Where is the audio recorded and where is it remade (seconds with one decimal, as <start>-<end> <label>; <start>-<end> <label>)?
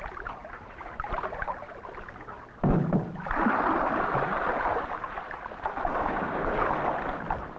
0.0-6.0 recorded; 6.0-6.7 remade; 6.7-7.6 recorded